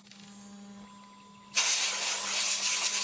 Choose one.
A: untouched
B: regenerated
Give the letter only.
A